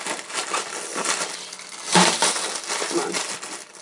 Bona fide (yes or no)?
yes